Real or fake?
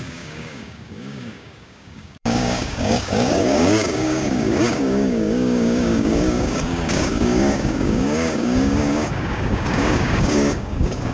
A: fake